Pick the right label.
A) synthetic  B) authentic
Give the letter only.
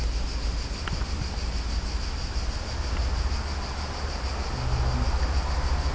B